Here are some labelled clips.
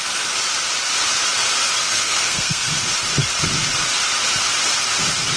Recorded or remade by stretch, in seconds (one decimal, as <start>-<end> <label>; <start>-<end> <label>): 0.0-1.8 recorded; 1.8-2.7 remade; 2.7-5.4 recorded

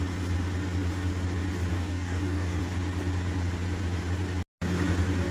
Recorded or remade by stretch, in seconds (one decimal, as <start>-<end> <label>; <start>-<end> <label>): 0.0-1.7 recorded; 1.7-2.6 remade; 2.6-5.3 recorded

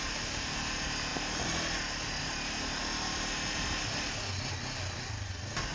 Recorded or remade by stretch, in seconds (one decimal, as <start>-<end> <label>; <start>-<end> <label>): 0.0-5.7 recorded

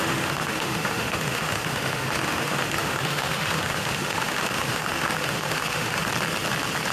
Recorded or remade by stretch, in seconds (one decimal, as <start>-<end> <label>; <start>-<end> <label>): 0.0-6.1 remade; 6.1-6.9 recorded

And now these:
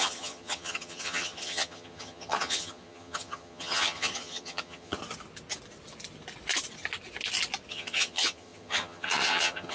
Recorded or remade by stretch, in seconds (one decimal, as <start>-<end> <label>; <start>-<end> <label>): 0.0-5.0 remade; 5.0-7.7 recorded; 7.7-9.7 remade